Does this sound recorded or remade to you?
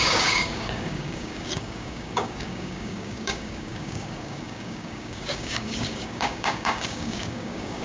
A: remade